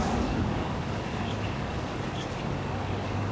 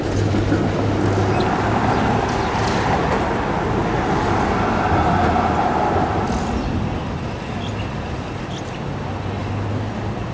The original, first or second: second